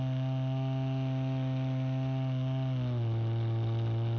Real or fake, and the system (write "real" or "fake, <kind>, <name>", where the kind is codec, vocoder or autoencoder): real